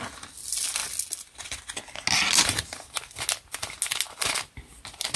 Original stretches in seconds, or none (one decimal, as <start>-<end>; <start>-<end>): 0.0-5.2